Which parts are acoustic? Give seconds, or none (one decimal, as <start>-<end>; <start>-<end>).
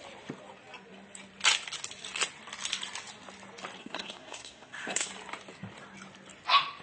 0.0-3.8; 5.1-6.8